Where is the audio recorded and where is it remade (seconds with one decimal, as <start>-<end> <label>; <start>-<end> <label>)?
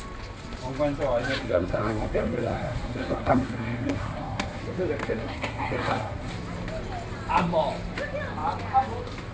0.0-1.4 recorded; 1.4-4.6 remade; 4.6-5.0 recorded; 5.0-6.3 remade; 6.3-9.3 recorded